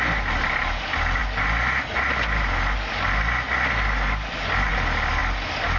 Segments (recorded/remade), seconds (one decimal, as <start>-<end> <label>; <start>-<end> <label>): 0.0-5.8 recorded